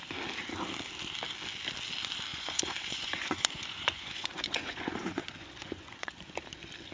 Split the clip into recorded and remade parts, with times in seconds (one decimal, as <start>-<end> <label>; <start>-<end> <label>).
0.0-2.3 recorded; 2.3-6.4 remade; 6.4-6.9 recorded